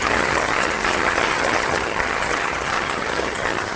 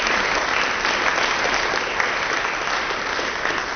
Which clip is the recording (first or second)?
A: second